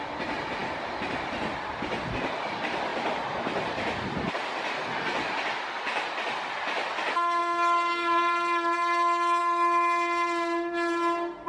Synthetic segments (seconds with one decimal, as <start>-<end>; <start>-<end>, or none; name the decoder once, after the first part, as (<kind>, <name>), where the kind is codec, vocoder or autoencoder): 0.6-1.7 (vocoder, BigVGAN v2); 2.9-4.3